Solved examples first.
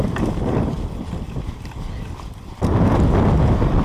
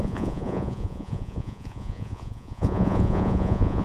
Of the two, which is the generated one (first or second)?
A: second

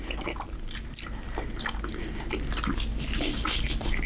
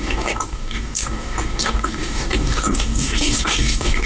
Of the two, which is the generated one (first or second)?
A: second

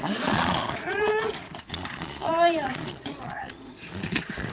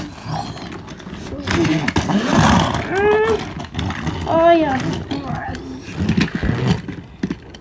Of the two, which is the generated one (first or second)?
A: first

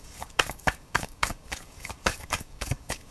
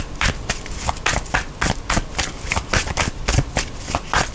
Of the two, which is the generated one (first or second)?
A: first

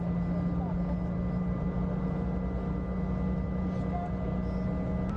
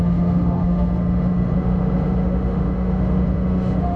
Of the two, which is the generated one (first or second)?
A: second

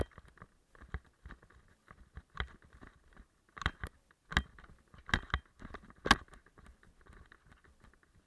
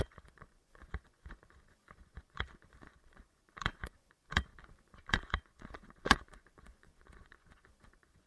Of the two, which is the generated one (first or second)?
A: second